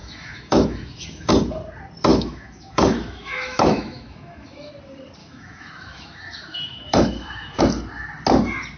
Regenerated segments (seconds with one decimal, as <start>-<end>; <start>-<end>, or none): 0.0-1.3; 2.1-4.7; 5.2-7.6